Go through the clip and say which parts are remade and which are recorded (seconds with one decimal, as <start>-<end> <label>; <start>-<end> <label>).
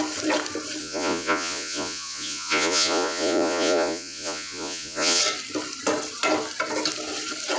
0.0-0.8 recorded; 0.8-5.2 remade; 5.2-7.6 recorded